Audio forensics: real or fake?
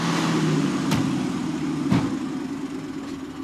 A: real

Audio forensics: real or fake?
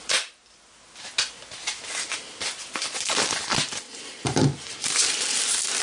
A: real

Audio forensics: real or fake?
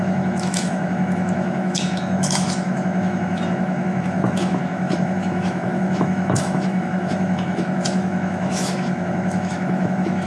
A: fake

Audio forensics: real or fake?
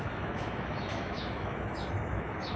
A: fake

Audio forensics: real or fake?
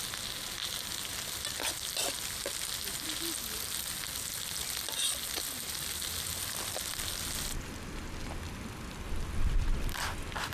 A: real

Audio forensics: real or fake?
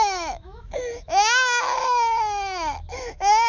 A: fake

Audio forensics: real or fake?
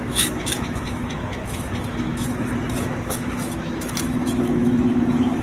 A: fake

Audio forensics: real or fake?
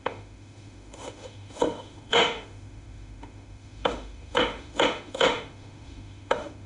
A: fake